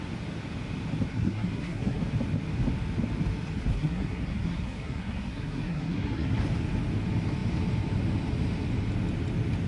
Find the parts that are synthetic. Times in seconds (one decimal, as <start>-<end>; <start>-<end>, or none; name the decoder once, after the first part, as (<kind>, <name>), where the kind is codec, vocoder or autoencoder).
1.1-2.0 (codec, SNAC); 3.7-6.4